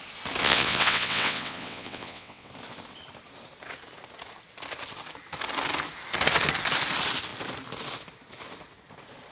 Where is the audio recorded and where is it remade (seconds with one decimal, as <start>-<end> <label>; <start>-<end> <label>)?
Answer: 0.0-0.4 recorded; 0.4-2.5 remade; 2.5-9.3 recorded